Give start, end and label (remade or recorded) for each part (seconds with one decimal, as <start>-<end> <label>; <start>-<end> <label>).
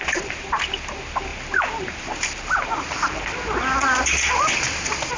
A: 0.0-5.2 recorded